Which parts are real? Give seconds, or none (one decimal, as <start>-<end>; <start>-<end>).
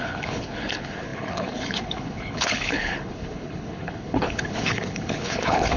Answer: none